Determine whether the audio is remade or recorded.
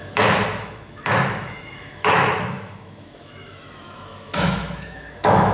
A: remade